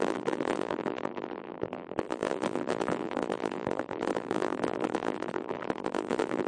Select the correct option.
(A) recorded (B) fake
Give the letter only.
B